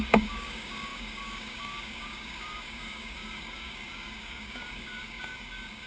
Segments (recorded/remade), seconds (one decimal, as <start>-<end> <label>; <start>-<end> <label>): 0.0-5.9 remade

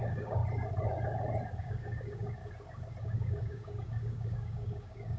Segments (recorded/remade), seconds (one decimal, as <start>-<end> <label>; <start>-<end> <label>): 0.0-0.4 remade; 0.4-1.6 recorded; 1.6-2.4 remade; 2.4-3.0 recorded; 3.0-5.2 remade

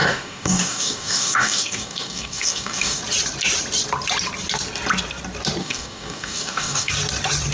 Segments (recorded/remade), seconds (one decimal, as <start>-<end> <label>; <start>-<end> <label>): 0.0-3.0 remade; 3.0-5.6 recorded; 5.6-6.9 remade; 6.9-7.5 recorded

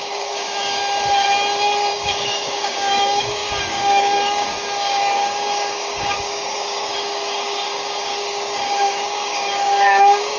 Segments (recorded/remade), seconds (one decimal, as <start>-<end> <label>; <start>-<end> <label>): 0.0-0.8 remade; 0.8-1.9 recorded; 1.9-10.4 remade

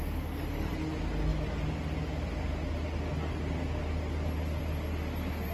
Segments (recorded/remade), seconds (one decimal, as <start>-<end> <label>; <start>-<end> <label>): 0.0-0.7 remade; 0.7-5.5 recorded

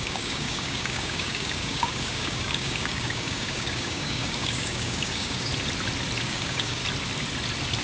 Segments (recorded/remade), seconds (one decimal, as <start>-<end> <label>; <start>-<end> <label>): 0.0-5.5 remade; 5.5-6.2 recorded; 6.2-6.8 remade; 6.8-7.8 recorded